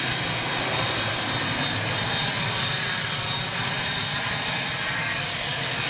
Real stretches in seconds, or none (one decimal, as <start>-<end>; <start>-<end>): 0.0-5.0